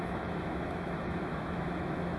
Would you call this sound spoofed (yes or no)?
yes